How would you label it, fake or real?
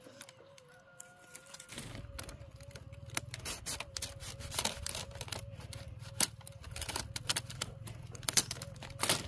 real